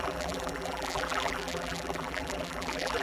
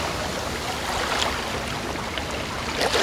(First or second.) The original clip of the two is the second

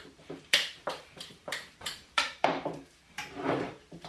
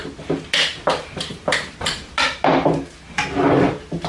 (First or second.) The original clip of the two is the second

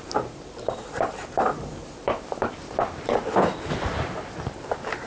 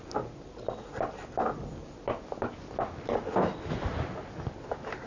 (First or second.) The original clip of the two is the second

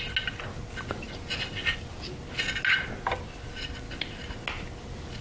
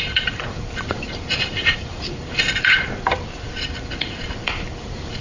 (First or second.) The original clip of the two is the first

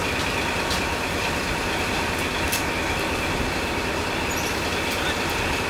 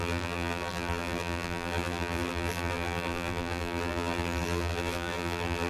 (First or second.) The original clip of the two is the first